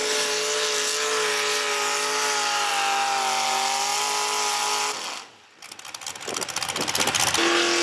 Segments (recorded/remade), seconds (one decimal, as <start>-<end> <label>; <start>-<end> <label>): 0.0-7.8 recorded